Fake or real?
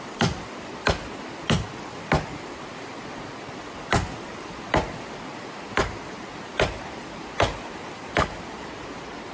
real